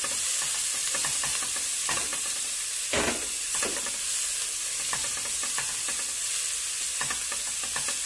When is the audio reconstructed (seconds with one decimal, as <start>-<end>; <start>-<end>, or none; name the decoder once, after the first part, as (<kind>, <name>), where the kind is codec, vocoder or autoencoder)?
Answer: 2.1-2.9 (vocoder, BigVGAN v2)